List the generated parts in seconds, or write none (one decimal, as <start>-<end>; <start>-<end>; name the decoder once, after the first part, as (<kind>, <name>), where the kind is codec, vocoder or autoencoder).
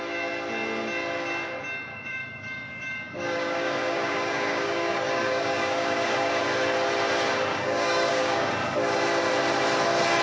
1.9-6.4 (codec, DAC); 7.5-8.5